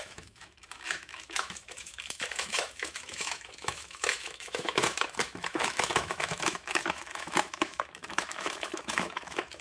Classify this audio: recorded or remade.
remade